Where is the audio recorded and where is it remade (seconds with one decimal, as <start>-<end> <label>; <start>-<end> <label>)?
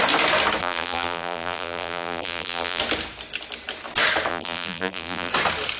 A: 0.0-0.6 recorded; 0.6-2.8 remade; 2.8-4.3 recorded; 4.3-5.3 remade; 5.3-5.8 recorded